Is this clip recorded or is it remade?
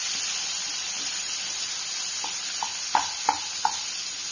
recorded